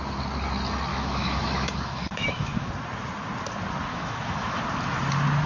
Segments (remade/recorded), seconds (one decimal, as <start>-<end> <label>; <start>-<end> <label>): 0.0-0.9 recorded; 0.9-2.7 remade; 2.7-3.9 recorded; 3.9-4.6 remade; 4.6-5.5 recorded